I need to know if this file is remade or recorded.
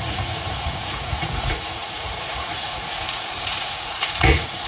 remade